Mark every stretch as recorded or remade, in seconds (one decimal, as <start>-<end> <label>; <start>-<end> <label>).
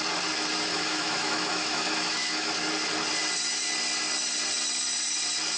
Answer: 0.0-0.7 recorded; 0.7-2.5 remade; 2.5-5.6 recorded